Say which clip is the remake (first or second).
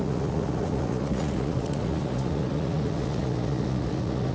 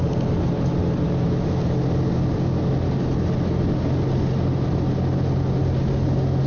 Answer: first